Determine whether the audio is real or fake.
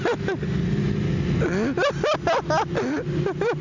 real